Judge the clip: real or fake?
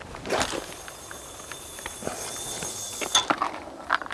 real